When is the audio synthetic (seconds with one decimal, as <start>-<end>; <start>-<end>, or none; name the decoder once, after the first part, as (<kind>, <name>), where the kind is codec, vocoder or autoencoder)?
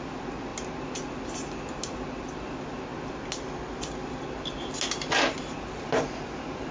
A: none